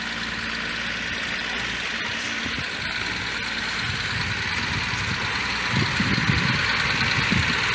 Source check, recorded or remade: recorded